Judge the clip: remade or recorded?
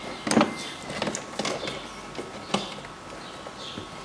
recorded